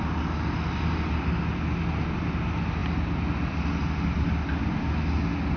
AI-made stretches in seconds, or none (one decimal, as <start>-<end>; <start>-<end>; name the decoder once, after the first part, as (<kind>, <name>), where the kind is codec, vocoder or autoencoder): none